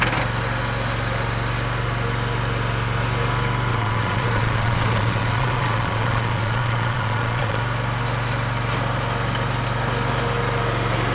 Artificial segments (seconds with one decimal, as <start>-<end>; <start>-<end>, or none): 3.7-7.6